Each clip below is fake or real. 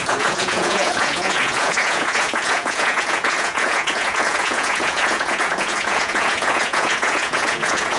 fake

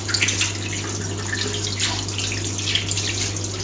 real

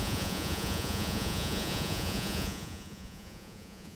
fake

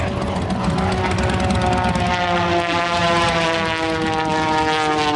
real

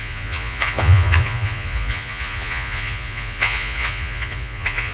fake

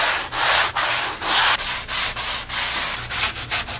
real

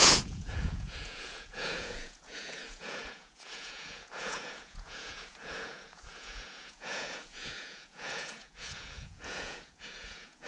fake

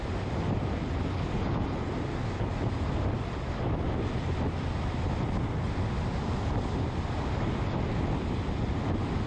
real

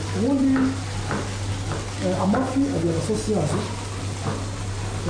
real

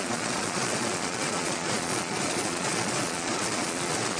fake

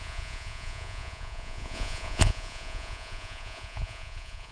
fake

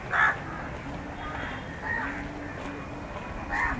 real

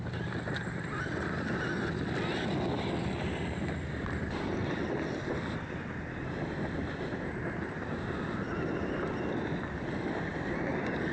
real